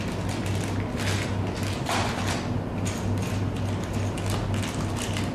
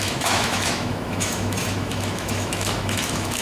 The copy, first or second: second